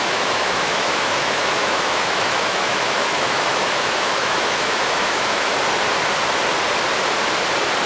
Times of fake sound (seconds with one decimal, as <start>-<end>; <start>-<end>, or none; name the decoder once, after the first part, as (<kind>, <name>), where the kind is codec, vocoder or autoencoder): 0.0-5.5 (autoencoder, DAC-VAE)